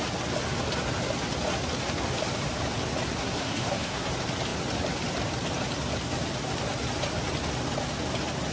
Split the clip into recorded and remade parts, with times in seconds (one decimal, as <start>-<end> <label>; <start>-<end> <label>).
0.0-3.2 recorded; 3.2-4.1 remade; 4.1-8.5 recorded